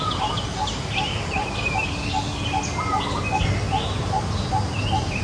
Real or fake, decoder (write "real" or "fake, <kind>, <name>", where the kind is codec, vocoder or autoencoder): real